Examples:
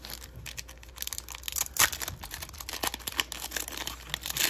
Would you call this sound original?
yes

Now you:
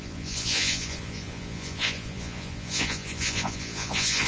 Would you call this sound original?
no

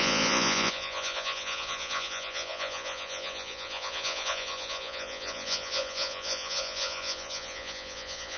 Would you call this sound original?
no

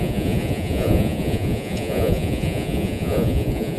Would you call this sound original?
no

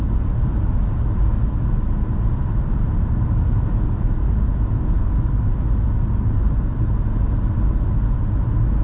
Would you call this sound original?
yes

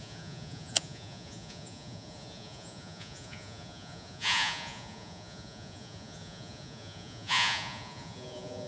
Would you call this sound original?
no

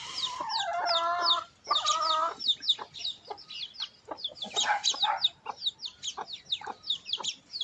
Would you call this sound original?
yes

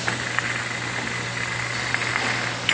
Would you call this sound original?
yes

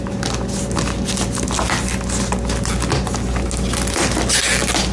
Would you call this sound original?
yes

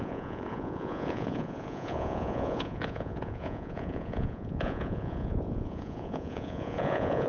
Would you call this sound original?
no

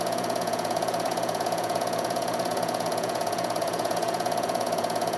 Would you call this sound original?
no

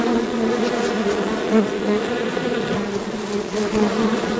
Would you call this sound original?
no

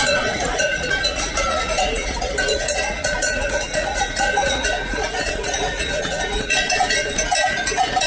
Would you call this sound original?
no